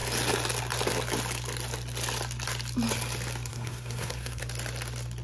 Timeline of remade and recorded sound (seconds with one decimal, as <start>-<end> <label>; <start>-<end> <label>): 0.0-3.5 recorded; 3.5-4.4 remade; 4.4-5.2 recorded